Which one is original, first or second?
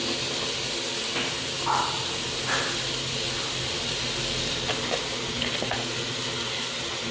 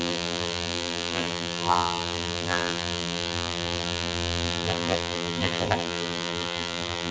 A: first